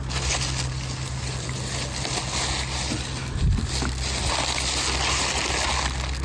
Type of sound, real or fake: real